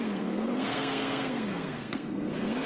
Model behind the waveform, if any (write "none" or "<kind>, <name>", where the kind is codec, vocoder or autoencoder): codec, SNAC